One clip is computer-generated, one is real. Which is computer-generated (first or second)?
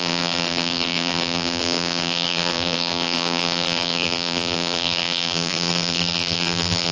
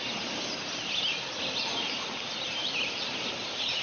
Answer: first